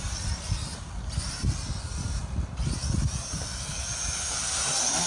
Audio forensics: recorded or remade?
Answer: recorded